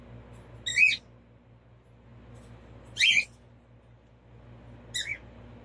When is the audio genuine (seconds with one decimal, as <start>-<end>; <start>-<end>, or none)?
0.0-5.6